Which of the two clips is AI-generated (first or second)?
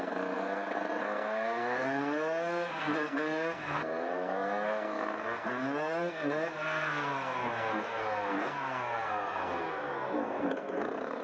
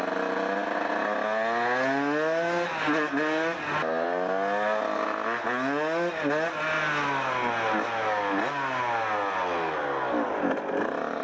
first